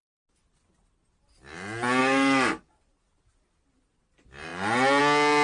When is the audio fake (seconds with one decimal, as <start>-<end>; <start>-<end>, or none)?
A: 2.0-2.7